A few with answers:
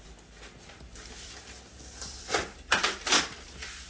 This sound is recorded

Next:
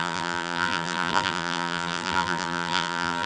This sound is remade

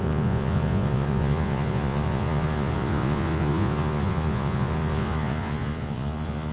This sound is remade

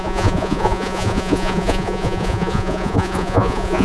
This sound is remade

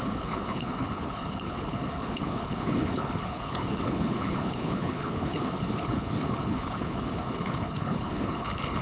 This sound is remade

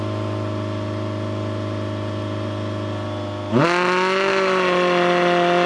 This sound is recorded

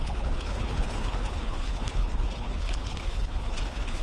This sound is remade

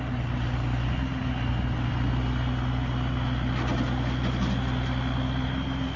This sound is recorded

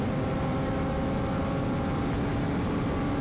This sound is recorded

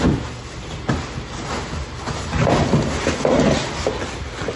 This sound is recorded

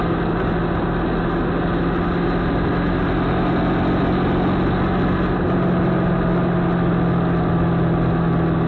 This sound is recorded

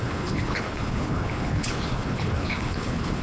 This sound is remade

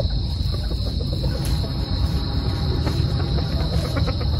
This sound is remade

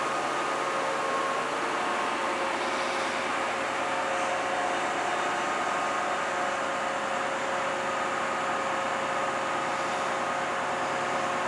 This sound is recorded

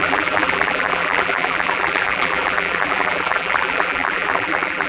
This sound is remade